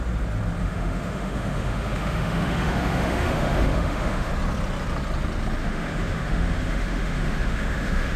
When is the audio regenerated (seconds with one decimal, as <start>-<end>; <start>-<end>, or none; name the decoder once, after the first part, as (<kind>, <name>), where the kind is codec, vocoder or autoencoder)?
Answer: 0.6-4.3 (autoencoder, DAC-VAE); 5.6-8.2